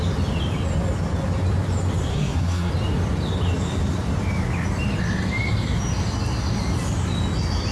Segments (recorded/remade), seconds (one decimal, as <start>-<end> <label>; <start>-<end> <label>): 0.0-2.1 recorded; 2.1-2.7 remade; 2.7-7.7 recorded